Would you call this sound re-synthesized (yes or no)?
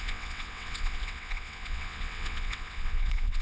yes